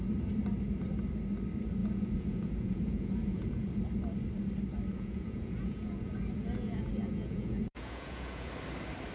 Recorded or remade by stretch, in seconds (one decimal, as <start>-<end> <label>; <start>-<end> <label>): 0.0-1.8 recorded; 1.8-3.7 remade; 3.7-4.9 recorded; 4.9-8.5 remade; 8.5-9.1 recorded